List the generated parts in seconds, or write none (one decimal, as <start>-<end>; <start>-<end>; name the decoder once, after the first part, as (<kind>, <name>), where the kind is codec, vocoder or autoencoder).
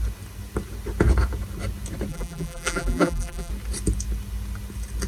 2.1-3.5 (vocoder, BigVGAN v2)